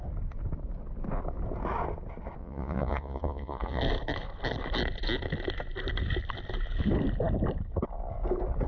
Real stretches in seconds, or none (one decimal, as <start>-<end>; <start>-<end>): 0.0-2.4; 3.8-8.7